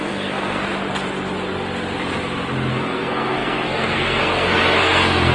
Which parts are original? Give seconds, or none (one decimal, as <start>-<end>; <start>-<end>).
0.6-2.7